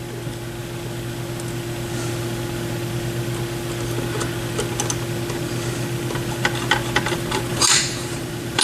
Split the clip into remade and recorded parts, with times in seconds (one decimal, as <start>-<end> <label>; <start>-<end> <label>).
0.0-7.5 recorded; 7.5-8.6 remade